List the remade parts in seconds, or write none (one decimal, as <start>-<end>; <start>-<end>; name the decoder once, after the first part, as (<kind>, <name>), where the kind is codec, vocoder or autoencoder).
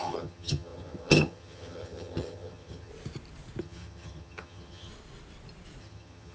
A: 0.0-2.9 (vocoder, HiFi-GAN); 3.6-4.9; 5.8-6.3